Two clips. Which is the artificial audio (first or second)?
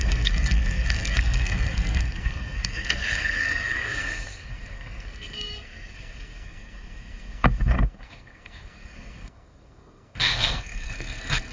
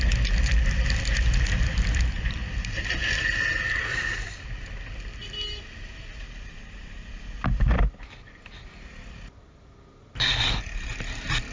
first